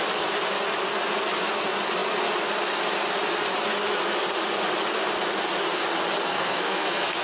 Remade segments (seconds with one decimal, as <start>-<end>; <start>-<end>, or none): 6.3-7.2